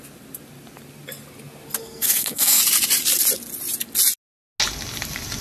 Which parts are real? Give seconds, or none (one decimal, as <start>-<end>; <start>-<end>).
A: 0.0-1.8; 2.6-5.4